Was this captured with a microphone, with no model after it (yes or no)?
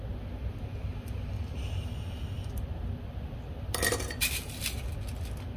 yes